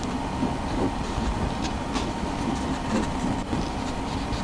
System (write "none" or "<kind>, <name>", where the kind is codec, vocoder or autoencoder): none